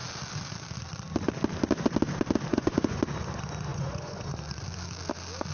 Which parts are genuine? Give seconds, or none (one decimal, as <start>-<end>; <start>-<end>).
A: 0.0-2.5; 3.0-3.7; 4.3-5.5

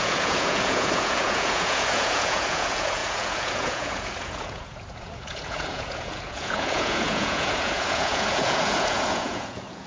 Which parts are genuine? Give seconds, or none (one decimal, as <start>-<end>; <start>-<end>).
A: none